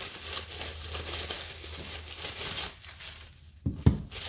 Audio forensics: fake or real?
real